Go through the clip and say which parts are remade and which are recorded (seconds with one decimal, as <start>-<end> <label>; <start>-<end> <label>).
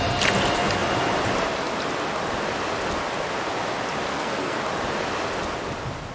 0.0-4.1 recorded; 4.1-4.6 remade; 4.6-6.1 recorded